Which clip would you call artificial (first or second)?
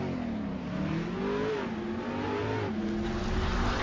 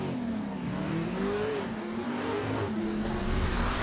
second